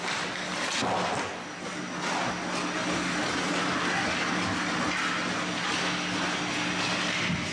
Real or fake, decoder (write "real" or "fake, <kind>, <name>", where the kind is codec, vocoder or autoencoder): real